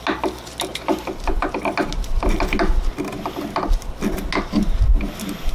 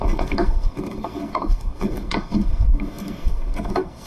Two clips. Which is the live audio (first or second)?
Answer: first